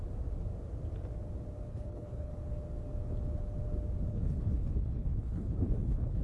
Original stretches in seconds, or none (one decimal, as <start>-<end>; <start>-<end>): 0.0-1.7; 2.3-4.1